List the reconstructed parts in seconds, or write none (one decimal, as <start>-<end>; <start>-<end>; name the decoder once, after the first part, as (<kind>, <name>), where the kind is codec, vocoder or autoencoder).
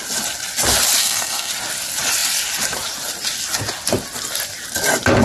1.0-1.5 (codec, SNAC)